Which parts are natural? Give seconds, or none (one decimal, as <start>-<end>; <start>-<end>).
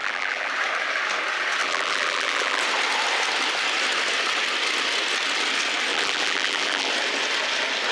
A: 0.5-1.6; 2.6-5.9; 6.9-7.9